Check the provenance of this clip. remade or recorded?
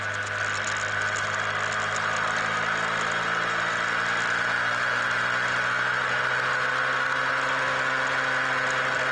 recorded